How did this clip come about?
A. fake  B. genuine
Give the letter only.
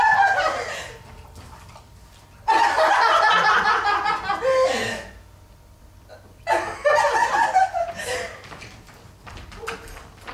B